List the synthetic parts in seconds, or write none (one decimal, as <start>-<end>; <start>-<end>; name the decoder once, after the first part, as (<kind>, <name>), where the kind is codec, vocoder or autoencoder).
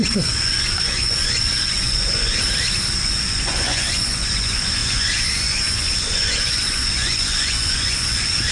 0.0-2.3 (vocoder, Vocos); 3.0-8.5